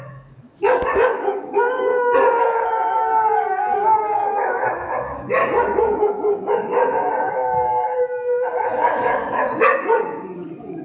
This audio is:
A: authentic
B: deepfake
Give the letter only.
B